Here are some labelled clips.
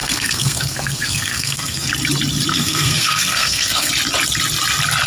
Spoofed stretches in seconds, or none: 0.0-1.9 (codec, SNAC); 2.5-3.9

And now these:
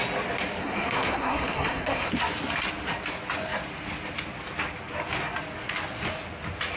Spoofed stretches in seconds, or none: 0.6-2.1 (codec, SNAC)

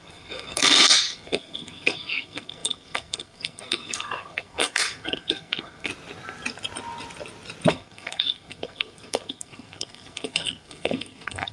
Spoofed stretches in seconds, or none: 0.0-5.9 (codec, SNAC); 7.7-11.5

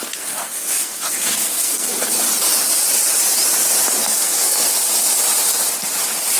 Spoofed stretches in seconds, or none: 0.0-2.2 (codec, SNAC); 4.0-4.7

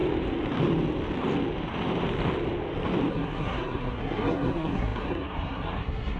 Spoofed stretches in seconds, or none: 3.1-6.2 (codec, SNAC)

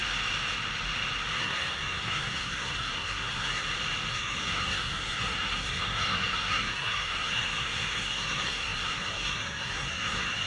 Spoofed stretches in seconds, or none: 1.4-3.6 (codec, SNAC); 4.1-10.5

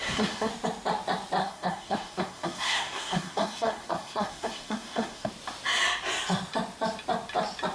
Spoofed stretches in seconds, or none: 0.0-0.5 (codec, SNAC); 1.4-5.3